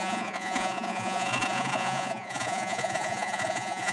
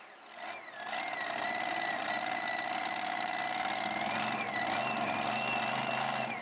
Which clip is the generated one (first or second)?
first